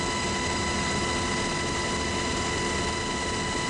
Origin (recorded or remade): recorded